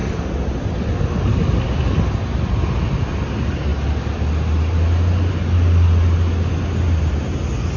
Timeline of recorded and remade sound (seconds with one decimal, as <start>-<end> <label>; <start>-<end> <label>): 0.0-7.8 recorded